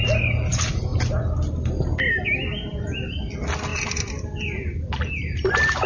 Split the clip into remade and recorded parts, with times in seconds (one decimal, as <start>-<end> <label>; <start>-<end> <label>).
0.0-5.9 recorded